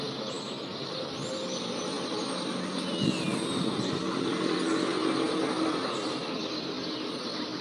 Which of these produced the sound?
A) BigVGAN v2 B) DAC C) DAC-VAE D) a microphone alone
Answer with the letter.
D